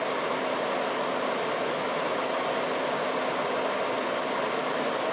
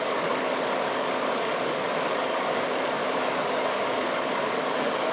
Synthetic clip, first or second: second